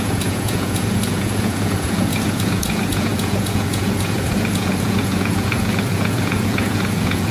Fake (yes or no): yes